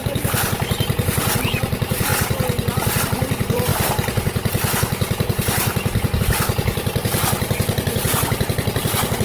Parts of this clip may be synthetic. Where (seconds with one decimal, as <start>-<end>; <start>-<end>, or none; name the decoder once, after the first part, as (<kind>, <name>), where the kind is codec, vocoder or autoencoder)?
1.3-2.1 (vocoder, BigVGAN v2); 3.0-9.2